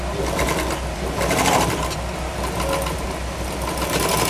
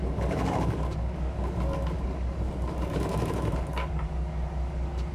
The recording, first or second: first